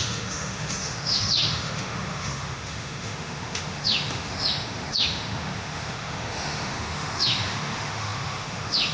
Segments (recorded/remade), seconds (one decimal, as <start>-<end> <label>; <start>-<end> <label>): 0.0-8.9 remade